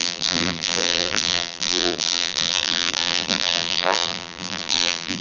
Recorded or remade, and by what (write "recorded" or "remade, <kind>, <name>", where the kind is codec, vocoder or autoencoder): remade, vocoder, BigVGAN v2